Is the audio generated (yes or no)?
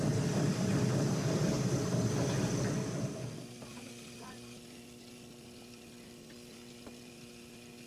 no